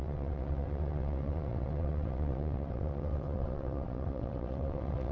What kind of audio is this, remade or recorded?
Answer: remade